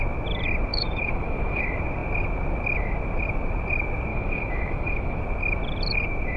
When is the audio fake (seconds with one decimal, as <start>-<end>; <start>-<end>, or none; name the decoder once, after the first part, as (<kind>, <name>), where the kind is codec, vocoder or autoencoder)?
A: 0.7-1.6 (autoencoder, DAC-VAE); 4.1-5.2